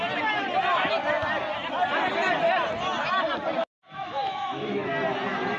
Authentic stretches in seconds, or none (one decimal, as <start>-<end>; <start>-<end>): 0.0-3.6; 4.9-5.6